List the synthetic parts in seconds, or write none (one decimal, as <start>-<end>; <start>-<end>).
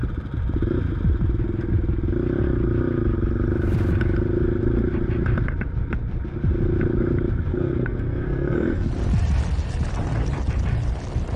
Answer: 7.5-8.9